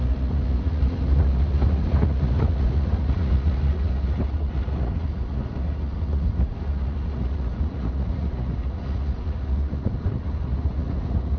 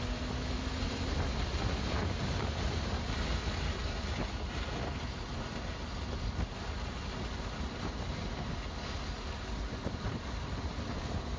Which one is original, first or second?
second